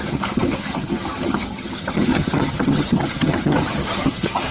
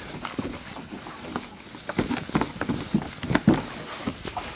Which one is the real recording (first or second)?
second